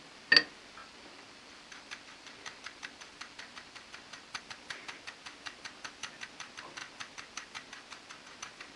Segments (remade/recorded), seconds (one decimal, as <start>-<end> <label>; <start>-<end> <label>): 0.0-0.8 recorded; 0.8-4.4 remade; 4.4-8.8 recorded